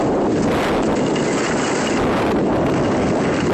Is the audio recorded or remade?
recorded